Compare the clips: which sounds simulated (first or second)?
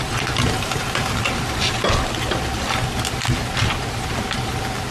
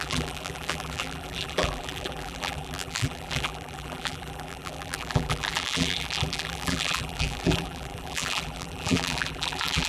second